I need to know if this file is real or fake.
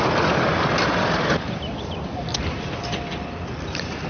real